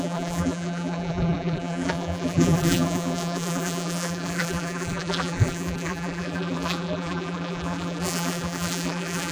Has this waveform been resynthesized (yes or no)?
yes